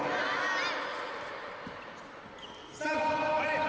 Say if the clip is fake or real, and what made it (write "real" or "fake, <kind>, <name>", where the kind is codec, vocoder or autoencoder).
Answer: real